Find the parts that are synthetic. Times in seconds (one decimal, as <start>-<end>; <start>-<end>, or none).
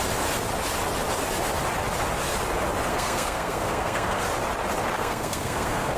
2.9-4.2; 5.0-6.0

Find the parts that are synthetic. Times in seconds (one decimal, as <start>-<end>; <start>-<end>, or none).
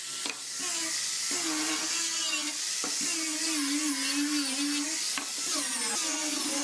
none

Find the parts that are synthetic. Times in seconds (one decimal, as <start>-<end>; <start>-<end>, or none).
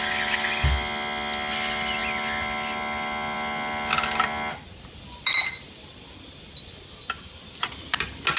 none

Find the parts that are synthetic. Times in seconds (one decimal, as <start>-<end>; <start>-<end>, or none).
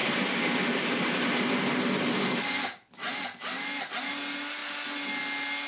none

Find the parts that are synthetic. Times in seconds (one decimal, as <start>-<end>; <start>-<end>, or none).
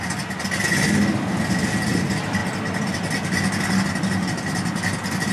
none